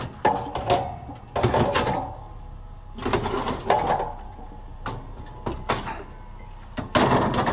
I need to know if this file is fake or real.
real